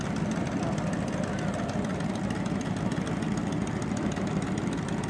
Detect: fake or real real